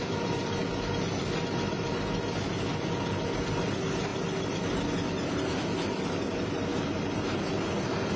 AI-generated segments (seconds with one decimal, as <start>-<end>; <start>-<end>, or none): none

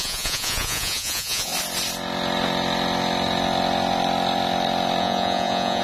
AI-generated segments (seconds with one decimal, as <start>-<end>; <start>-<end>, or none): 0.0-1.5; 5.0-5.8